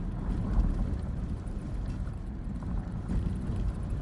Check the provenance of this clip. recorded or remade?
remade